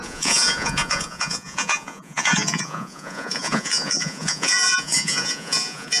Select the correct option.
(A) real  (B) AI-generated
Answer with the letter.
B